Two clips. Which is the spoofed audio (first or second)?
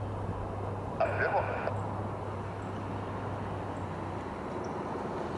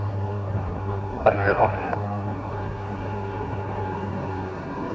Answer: second